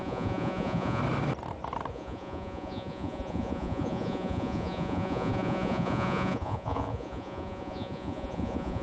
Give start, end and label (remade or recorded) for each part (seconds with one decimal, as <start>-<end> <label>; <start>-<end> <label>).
0.0-1.0 remade; 1.0-1.9 recorded; 1.9-8.8 remade